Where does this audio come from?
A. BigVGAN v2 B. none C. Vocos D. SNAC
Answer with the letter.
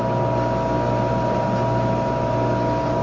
B